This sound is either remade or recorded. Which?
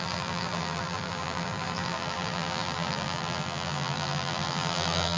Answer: remade